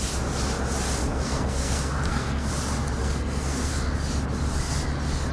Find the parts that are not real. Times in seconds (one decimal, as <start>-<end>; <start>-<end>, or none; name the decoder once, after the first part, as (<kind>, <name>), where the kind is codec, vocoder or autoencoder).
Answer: 1.0-2.5 (codec, SNAC); 3.0-3.7